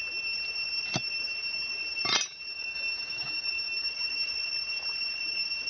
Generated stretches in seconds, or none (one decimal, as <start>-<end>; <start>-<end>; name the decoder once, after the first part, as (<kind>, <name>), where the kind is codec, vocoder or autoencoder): 2.5-3.9 (autoencoder, DAC-VAE)